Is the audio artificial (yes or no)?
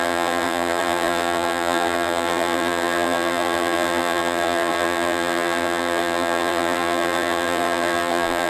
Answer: yes